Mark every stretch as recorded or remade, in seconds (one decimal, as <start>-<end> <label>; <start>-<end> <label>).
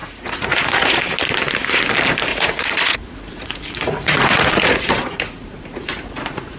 0.0-1.0 remade; 1.0-2.3 recorded; 2.3-6.6 remade